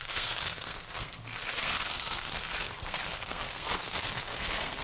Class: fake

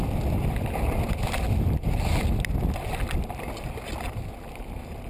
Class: real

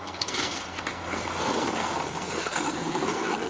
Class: fake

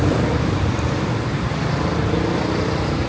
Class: fake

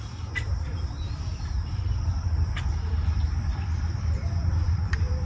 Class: fake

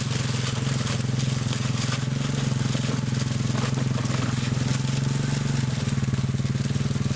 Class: real